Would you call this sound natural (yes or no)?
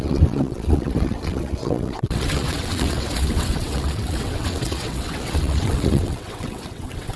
no